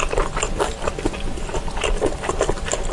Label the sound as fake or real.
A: real